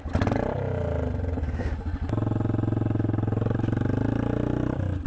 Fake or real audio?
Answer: real